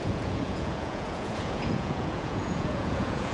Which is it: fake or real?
fake